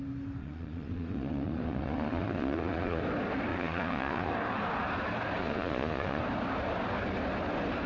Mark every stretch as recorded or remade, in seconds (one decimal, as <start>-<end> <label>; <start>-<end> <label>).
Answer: 0.0-0.4 recorded; 0.4-3.0 remade; 3.0-3.5 recorded; 3.5-4.3 remade; 4.3-5.4 recorded; 5.4-6.2 remade; 6.2-7.9 recorded